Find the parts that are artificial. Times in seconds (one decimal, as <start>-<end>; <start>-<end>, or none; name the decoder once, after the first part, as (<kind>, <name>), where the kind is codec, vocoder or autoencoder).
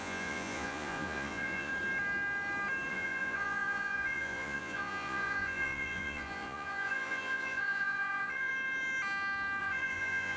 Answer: 0.0-1.7 (vocoder, Vocos); 2.9-8.5; 9.6-10.4